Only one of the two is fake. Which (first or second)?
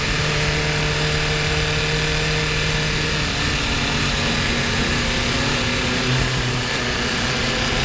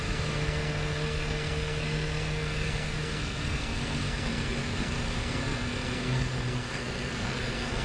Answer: second